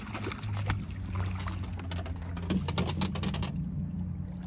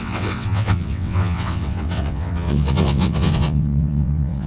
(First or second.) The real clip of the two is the first